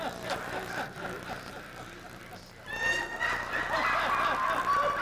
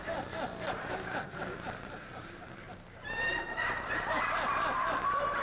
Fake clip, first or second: second